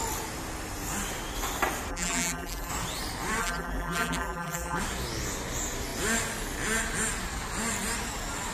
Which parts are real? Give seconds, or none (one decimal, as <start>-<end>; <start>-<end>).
0.0-1.9; 2.7-3.4; 4.8-8.5